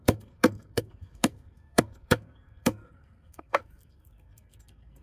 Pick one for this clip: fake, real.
fake